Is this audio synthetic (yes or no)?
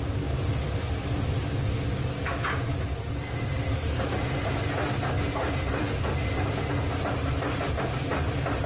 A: no